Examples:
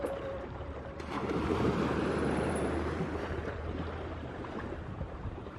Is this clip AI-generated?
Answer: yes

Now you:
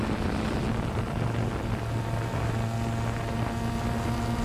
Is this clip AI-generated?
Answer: no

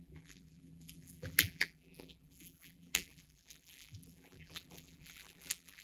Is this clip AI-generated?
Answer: yes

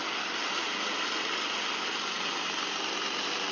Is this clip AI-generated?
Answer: yes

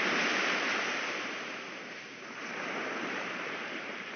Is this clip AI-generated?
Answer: yes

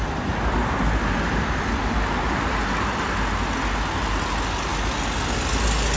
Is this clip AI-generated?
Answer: no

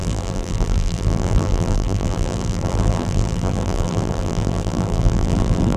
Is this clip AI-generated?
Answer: yes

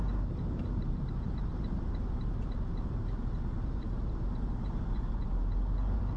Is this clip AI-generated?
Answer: no